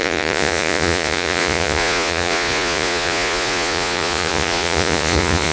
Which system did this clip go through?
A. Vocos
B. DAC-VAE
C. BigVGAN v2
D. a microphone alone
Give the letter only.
A